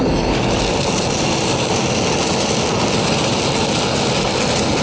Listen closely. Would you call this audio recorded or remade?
recorded